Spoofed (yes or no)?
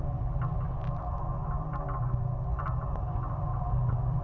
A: no